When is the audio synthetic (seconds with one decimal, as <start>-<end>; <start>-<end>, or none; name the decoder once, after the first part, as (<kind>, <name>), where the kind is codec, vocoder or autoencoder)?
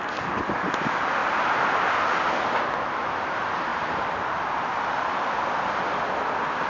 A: 3.7-4.6 (vocoder, BigVGAN v2)